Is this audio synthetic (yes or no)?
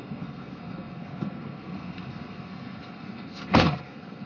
yes